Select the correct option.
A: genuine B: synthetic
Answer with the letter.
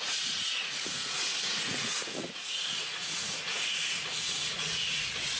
B